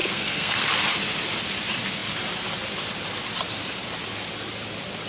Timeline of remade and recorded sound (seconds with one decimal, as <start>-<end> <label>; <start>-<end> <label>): 0.0-0.6 remade; 0.6-5.1 recorded